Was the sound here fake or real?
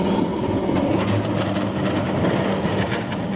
real